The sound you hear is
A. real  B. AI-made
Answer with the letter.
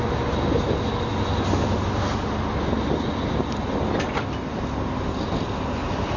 A